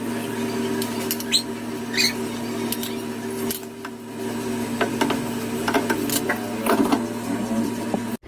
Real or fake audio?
real